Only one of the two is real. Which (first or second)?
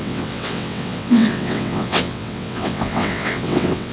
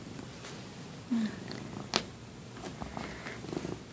second